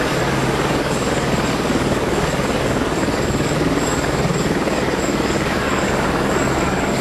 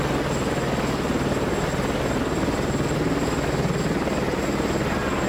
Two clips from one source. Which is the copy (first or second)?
first